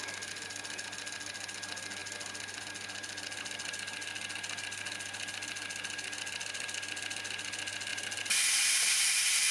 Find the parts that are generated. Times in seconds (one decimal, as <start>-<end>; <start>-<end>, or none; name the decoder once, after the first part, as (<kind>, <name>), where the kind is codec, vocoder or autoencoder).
7.9-9.5 (vocoder, BigVGAN v2)